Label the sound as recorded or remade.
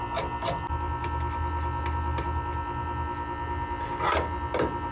recorded